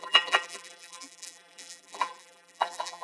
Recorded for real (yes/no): no